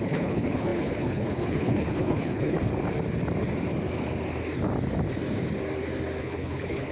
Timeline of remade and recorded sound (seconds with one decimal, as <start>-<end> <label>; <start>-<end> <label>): 0.0-2.7 remade; 2.7-6.2 recorded; 6.2-6.9 remade